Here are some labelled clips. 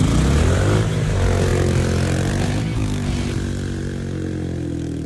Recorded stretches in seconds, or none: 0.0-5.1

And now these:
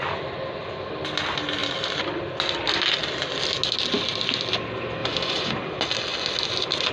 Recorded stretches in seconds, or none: 0.0-5.0; 5.5-6.9

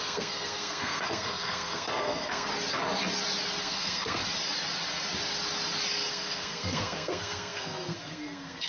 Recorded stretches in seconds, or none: 2.5-3.6; 4.2-6.1

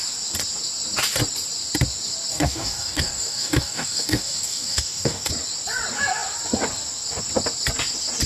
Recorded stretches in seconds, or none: 0.0-2.3; 5.3-8.3